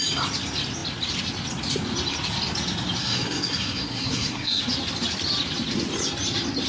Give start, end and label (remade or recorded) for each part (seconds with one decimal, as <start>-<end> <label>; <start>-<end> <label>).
0.0-3.0 recorded; 3.0-4.6 remade; 4.6-6.7 recorded